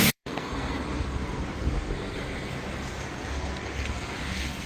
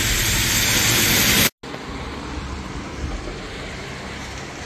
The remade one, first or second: first